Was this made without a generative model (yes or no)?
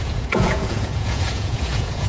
no